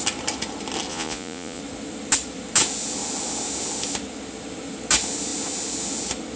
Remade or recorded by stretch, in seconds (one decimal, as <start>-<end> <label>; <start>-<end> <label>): 0.0-0.9 recorded; 0.9-1.6 remade; 1.6-6.4 recorded